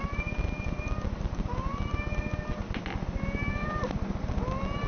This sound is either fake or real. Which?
real